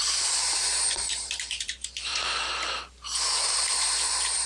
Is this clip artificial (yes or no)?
yes